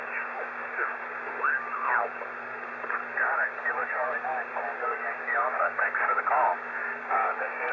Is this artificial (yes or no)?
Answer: yes